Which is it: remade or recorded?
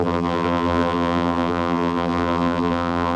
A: remade